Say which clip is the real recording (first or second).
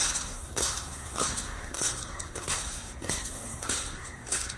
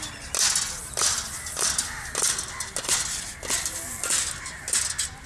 second